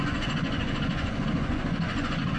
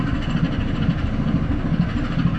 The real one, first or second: second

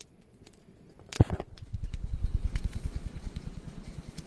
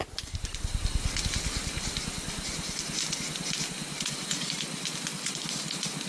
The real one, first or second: second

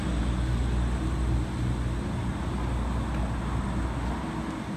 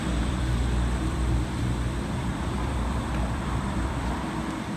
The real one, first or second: first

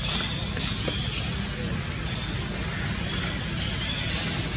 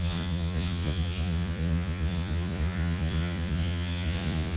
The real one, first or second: first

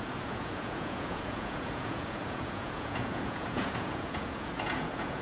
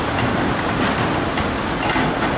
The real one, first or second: second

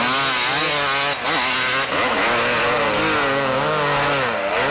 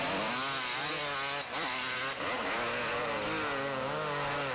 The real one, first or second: first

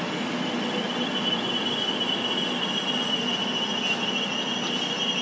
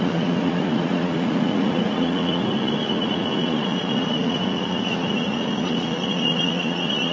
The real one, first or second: first